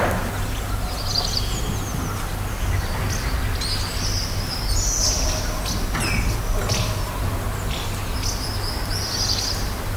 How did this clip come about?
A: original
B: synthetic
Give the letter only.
A